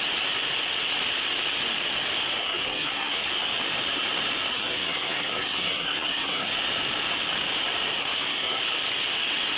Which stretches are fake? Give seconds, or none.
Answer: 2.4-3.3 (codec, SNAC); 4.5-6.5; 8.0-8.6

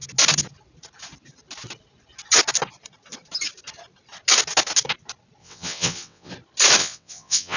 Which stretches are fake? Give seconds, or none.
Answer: 5.4-6.3 (vocoder, WaveNeXt); 6.8-7.6

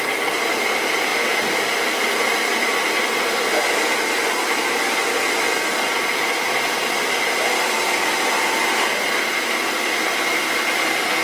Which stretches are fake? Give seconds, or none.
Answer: 0.0-1.1 (vocoder, BigVGAN v2); 3.8-11.2

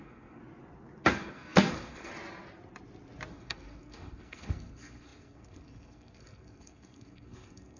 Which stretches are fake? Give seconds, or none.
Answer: 0.0-0.4 (codec, SNAC); 1.1-2.1; 3.3-7.8

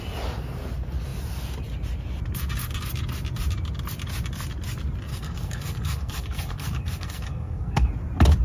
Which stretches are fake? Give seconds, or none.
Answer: 5.1-7.9 (codec, SNAC)

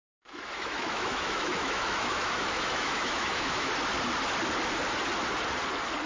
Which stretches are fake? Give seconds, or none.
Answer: 0.0-3.7 (autoencoder, DAC-VAE)

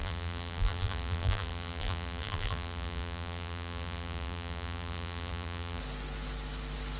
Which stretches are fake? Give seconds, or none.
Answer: 0.0-5.8 (vocoder, BigVGAN v2)